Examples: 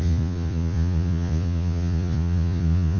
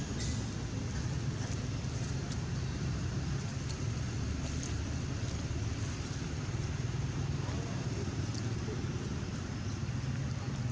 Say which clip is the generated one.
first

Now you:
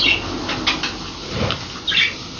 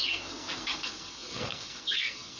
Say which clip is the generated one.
second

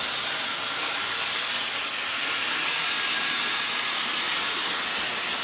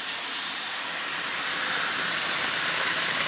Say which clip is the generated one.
second